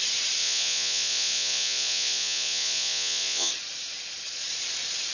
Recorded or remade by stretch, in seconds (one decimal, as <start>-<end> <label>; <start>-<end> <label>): 0.0-0.4 recorded; 0.4-3.5 remade; 3.5-5.1 recorded